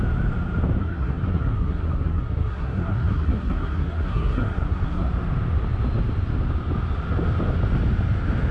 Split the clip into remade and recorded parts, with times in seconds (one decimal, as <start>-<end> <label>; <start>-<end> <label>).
0.0-0.8 recorded; 0.8-5.1 remade; 5.1-8.5 recorded